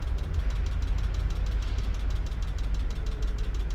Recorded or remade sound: recorded